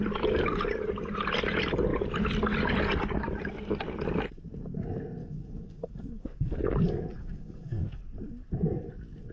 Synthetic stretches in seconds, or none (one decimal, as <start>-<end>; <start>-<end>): 5.2-8.0